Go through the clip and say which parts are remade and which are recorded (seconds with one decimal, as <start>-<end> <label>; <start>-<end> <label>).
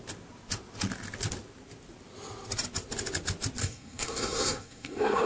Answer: 0.0-3.6 recorded; 3.6-5.3 remade